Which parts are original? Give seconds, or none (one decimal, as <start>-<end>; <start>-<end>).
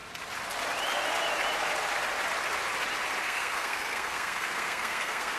0.0-3.2